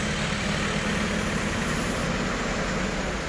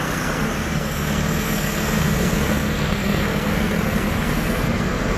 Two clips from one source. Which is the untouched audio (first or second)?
first